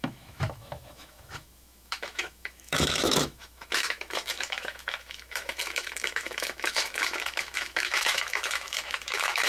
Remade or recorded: remade